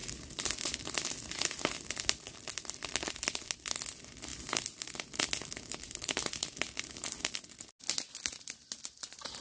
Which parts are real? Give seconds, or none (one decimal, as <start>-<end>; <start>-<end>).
0.0-9.4